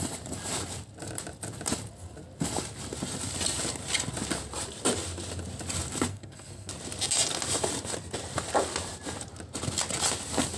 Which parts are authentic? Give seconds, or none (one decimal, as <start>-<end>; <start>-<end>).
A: 0.0-6.1; 6.7-10.6

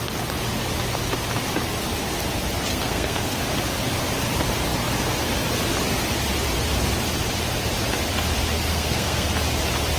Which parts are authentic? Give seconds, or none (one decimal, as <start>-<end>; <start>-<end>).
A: 0.0-2.7; 3.4-8.7; 9.3-10.0

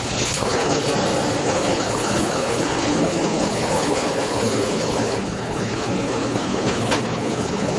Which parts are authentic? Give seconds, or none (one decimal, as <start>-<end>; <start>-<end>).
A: 0.9-1.4

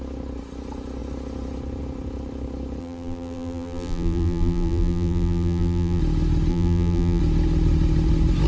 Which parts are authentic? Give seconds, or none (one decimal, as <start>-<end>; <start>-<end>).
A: 0.0-2.8; 6.0-6.5; 7.2-8.5

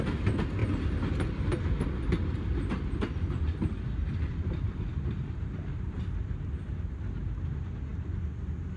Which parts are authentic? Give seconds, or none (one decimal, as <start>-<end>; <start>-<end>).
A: 0.0-8.8